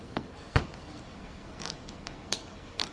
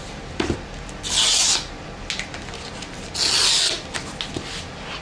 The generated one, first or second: first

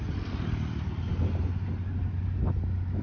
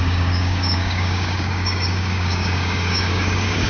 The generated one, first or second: second